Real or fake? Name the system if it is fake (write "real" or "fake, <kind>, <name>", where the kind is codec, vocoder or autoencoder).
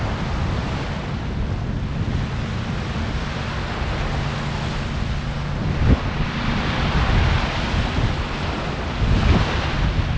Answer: real